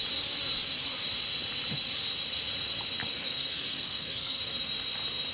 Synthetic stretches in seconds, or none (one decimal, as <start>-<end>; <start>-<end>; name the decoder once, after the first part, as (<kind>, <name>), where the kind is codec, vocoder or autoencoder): 3.1-4.4 (codec, SNAC)